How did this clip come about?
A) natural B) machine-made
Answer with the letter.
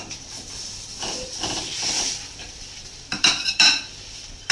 B